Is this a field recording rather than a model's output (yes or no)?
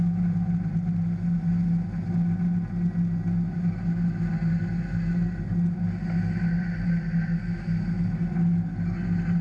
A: yes